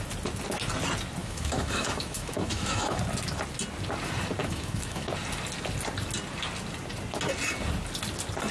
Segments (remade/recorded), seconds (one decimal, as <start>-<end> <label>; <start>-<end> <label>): 0.0-1.2 recorded; 1.2-3.0 remade; 3.0-4.4 recorded; 4.4-5.1 remade; 5.1-8.5 recorded